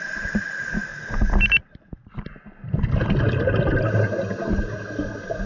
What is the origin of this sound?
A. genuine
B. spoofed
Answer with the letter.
A